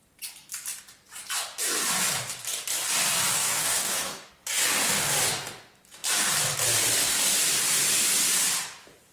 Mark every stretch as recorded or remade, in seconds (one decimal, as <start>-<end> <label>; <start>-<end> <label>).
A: 0.0-3.3 recorded; 3.3-4.3 remade; 4.3-9.1 recorded